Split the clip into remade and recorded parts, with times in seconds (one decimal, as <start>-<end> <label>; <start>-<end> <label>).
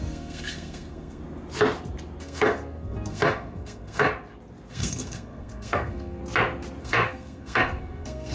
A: 0.0-1.2 remade; 1.2-2.2 recorded; 2.2-4.1 remade; 4.1-4.7 recorded; 4.7-6.2 remade; 6.2-6.8 recorded; 6.8-8.3 remade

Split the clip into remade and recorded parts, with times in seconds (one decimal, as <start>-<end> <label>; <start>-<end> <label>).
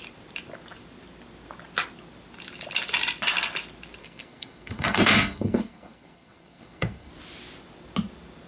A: 0.0-4.0 recorded; 4.0-7.1 remade; 7.1-8.5 recorded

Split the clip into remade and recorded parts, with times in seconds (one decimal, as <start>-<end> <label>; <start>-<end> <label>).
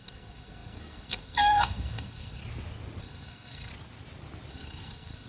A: 0.0-2.4 remade; 2.4-3.0 recorded; 3.0-3.7 remade; 3.7-4.5 recorded; 4.5-5.3 remade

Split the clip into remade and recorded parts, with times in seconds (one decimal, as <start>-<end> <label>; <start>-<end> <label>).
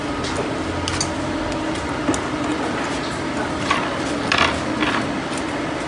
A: 0.0-5.9 recorded